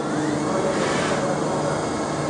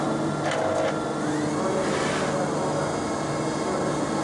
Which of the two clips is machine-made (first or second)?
first